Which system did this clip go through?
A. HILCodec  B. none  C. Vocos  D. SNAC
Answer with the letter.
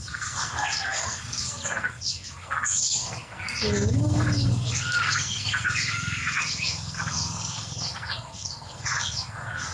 D